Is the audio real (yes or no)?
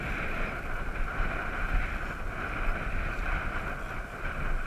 yes